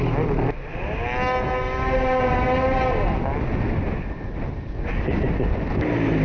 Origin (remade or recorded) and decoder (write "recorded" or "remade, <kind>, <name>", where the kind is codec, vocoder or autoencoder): recorded